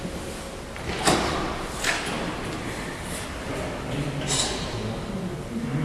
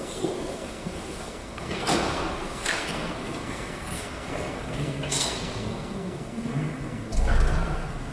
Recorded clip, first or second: first